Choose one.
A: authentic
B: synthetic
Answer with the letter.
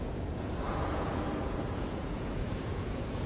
B